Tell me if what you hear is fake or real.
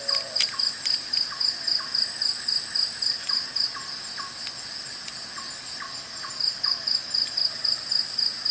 real